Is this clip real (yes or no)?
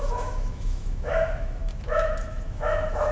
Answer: no